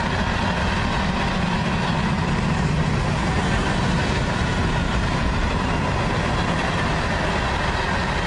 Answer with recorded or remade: recorded